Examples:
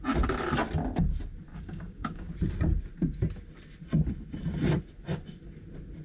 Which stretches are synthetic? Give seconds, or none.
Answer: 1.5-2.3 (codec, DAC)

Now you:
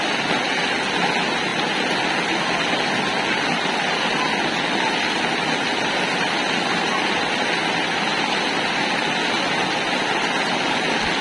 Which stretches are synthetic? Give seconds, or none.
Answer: none

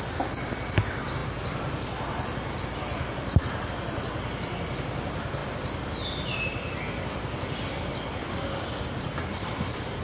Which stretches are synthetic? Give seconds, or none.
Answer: 8.2-8.9 (codec, DAC)